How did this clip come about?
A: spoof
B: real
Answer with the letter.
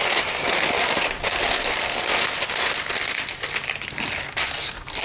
B